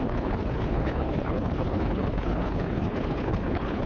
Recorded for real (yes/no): no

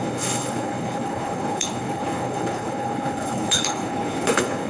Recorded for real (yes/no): no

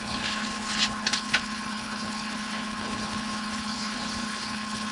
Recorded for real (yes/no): no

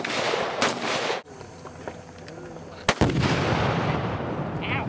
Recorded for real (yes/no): yes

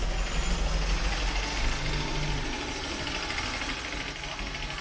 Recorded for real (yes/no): yes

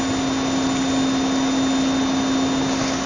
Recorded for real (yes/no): yes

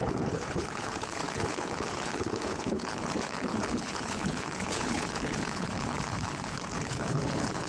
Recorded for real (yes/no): no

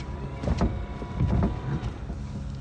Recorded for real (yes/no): yes